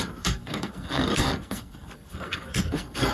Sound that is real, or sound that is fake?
fake